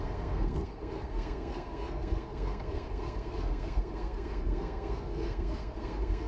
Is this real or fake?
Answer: fake